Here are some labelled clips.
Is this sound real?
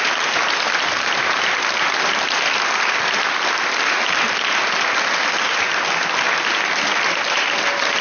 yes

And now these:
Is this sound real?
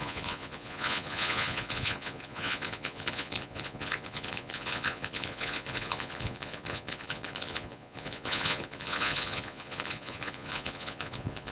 no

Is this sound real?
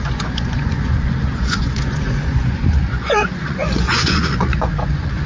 no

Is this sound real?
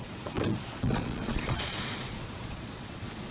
no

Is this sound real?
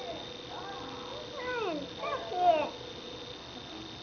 yes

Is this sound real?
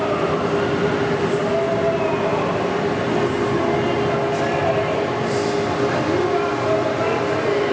yes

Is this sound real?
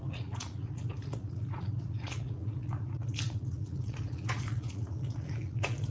no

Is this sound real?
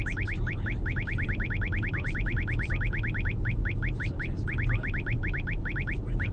yes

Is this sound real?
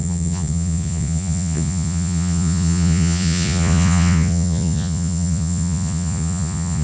no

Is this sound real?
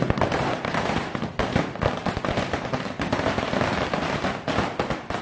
yes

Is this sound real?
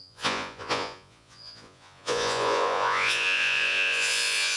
no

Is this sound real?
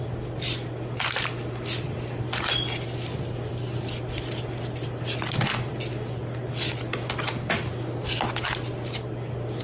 yes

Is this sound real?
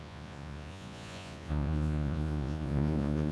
no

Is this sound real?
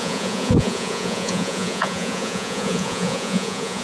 no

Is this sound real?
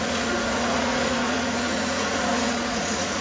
no